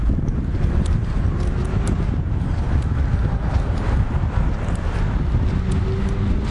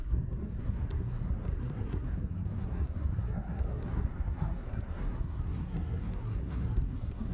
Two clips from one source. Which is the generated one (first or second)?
second